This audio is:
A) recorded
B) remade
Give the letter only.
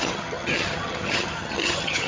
B